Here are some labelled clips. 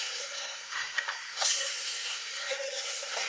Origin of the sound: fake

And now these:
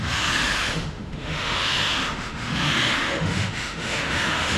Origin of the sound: fake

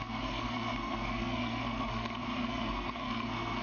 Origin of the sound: fake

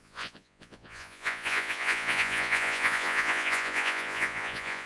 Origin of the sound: fake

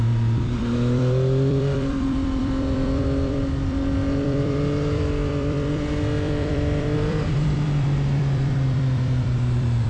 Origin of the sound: fake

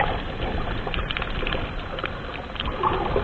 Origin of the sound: real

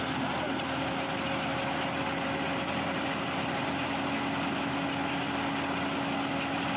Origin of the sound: real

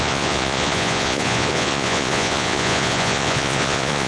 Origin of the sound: fake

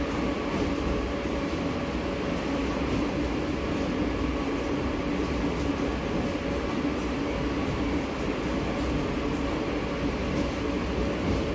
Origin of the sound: real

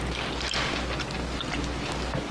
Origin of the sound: real